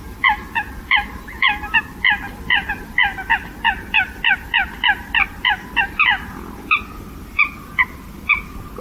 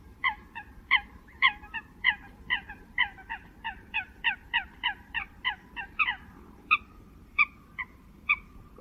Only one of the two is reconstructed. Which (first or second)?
second